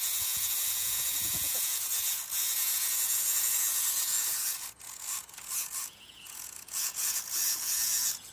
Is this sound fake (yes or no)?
yes